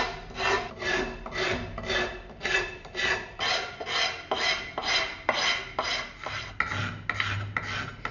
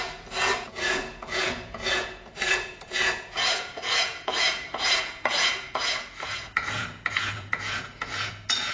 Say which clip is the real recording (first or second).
first